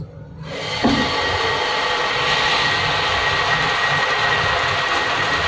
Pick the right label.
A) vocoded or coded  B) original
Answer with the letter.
B